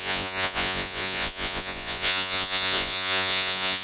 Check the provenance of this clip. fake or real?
fake